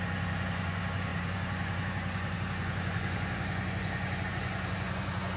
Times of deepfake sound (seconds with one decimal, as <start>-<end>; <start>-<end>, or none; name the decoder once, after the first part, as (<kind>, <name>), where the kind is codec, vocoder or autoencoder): 0.0-5.4 (vocoder, Vocos)